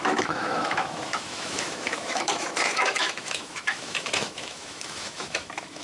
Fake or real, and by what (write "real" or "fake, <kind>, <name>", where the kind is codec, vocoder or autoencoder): fake, autoencoder, DAC-VAE